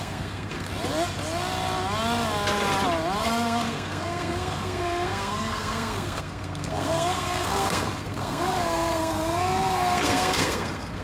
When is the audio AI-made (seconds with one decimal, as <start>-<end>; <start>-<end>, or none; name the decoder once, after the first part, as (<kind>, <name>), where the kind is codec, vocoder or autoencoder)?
0.0-0.7 (codec, SNAC); 3.2-11.0